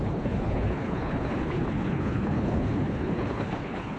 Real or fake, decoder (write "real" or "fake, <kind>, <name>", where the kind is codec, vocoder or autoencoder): fake, codec, HILCodec